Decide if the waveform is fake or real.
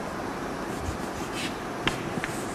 real